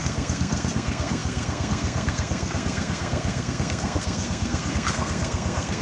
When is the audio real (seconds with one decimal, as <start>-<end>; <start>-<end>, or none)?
none

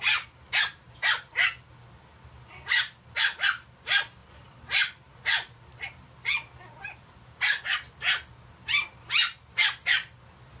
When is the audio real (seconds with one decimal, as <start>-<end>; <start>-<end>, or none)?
0.0-10.6

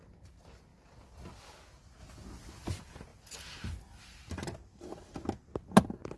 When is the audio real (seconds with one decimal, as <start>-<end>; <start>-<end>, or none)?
0.0-6.2